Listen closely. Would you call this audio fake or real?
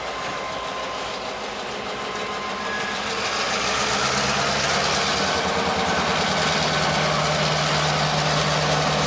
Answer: real